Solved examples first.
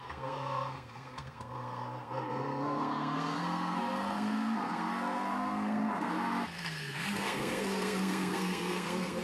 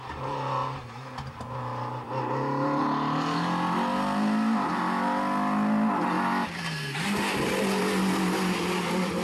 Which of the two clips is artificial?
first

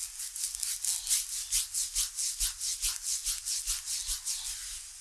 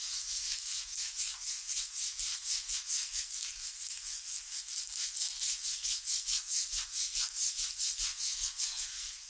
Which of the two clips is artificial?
second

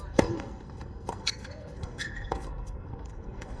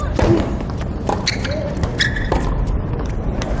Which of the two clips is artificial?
first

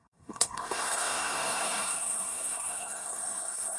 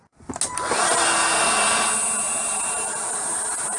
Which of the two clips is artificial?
first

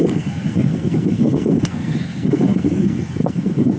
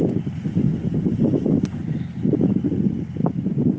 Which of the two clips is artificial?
first